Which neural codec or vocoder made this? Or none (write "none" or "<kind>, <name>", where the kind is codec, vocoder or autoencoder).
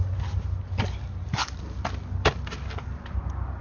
none